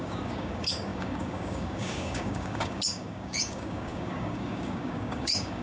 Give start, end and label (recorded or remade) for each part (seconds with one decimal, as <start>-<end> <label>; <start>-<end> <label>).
0.0-5.6 remade